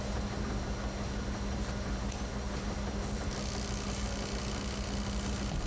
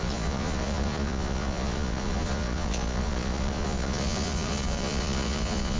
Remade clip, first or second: second